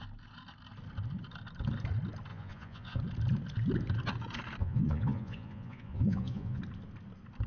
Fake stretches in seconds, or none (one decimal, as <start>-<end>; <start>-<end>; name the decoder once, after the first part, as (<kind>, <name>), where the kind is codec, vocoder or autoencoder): 2.3-3.0 (vocoder, Vocos); 4.6-6.6